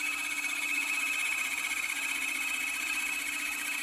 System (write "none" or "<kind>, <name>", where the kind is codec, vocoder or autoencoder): none